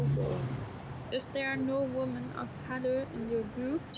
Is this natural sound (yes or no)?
yes